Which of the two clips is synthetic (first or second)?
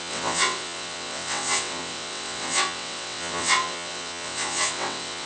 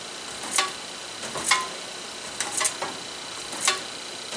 first